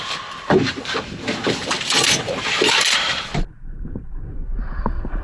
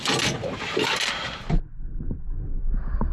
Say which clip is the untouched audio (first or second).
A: second